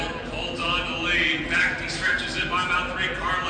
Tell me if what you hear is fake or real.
real